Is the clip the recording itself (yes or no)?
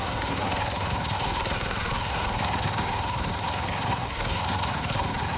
no